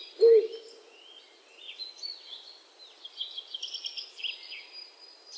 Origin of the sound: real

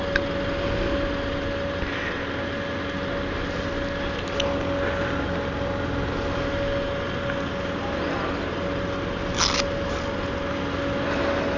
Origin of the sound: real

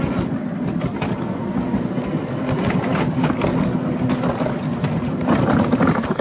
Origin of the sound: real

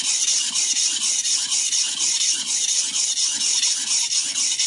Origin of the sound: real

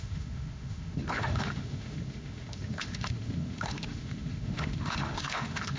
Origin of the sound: fake